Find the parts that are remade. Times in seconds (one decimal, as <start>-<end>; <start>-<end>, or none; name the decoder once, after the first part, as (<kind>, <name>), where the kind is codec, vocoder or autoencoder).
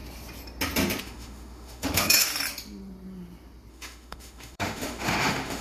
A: 1.0-2.3 (autoencoder, DAC-VAE); 3.7-5.6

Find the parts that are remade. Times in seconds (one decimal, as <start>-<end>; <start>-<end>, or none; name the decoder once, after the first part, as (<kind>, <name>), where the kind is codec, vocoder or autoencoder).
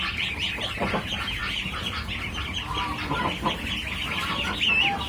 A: none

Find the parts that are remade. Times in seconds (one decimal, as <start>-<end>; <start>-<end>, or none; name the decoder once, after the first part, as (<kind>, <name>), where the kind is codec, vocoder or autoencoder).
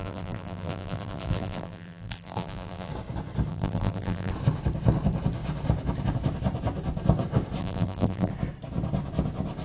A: 0.0-2.9 (vocoder, BigVGAN v2); 3.5-4.3; 7.6-8.3